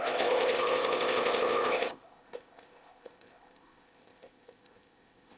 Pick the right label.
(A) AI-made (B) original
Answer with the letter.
A